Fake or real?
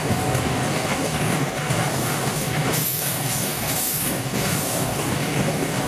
fake